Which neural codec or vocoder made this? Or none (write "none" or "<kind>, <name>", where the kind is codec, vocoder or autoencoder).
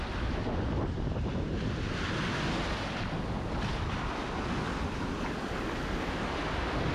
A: none